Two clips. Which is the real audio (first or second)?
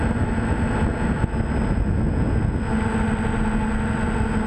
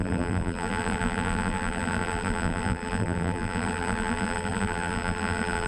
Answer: first